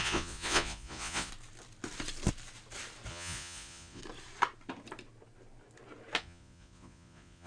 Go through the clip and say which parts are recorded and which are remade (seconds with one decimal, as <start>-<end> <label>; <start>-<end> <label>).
0.0-1.3 remade; 1.3-3.1 recorded; 3.1-4.0 remade; 4.0-6.2 recorded; 6.2-7.5 remade